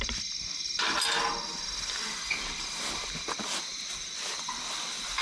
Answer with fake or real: real